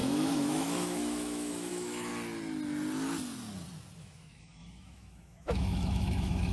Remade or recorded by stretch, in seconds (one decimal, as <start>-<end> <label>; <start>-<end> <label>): 0.0-2.1 remade; 2.1-4.0 recorded; 4.0-6.5 remade